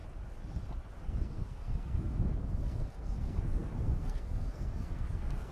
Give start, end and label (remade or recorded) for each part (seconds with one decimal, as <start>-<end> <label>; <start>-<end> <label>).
0.0-1.0 recorded; 1.0-5.5 remade